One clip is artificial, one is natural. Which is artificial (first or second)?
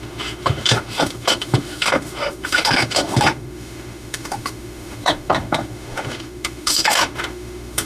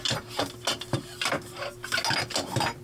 first